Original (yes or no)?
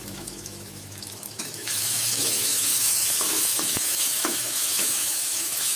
no